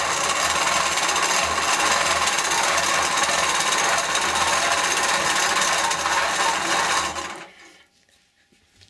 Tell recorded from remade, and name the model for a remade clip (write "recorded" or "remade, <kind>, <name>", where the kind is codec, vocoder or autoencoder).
recorded